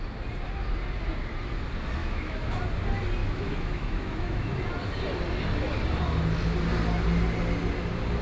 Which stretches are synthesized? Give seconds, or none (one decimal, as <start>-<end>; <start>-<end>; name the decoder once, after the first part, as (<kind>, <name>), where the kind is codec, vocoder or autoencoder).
2.0-2.6 (autoencoder, DAC-VAE); 3.2-4.5